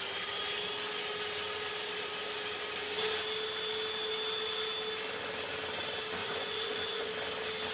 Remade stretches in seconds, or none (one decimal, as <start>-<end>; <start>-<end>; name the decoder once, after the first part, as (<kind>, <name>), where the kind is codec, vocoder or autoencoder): 6.2-7.1 (vocoder, Vocos)